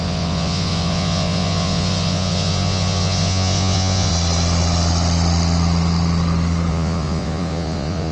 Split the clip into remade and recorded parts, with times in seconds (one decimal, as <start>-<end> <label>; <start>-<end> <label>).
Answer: 0.0-4.1 remade; 4.1-6.7 recorded; 6.7-8.1 remade